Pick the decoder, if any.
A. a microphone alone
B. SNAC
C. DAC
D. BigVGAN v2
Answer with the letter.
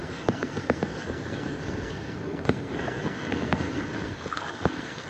B